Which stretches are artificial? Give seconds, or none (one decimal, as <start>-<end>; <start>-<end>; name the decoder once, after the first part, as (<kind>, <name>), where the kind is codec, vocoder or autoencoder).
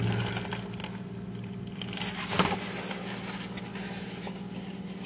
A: none